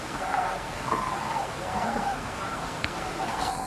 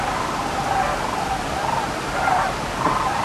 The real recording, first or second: second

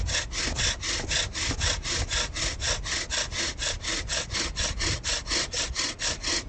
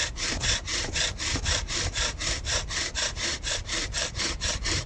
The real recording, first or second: first